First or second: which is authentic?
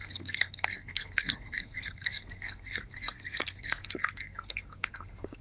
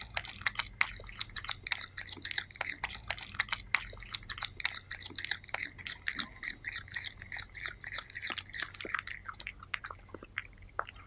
second